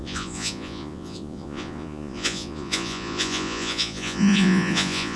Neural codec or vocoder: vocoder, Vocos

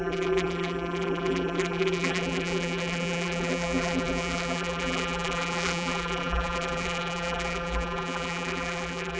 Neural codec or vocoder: vocoder, BigVGAN v2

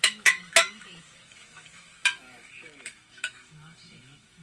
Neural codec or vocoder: autoencoder, DAC-VAE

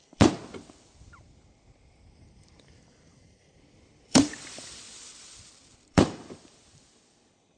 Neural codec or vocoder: vocoder, BigVGAN v2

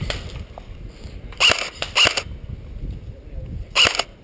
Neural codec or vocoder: none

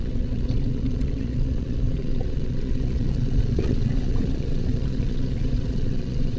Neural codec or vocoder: vocoder, Vocos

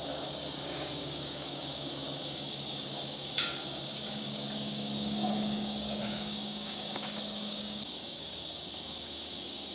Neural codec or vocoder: codec, DAC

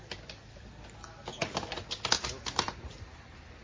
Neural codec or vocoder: none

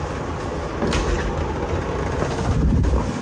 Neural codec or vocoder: none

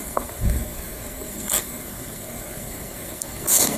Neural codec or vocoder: codec, SNAC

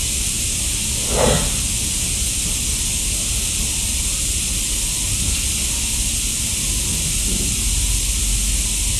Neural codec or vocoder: none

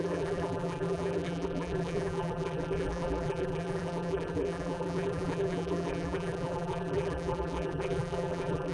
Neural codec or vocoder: vocoder, BigVGAN v2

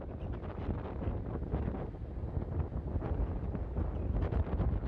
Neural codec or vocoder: none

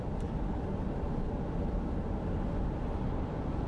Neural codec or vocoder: none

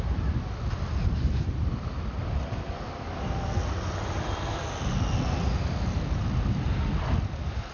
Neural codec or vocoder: none